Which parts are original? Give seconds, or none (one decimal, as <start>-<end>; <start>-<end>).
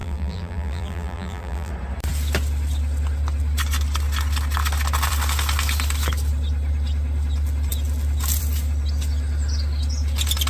1.7-10.5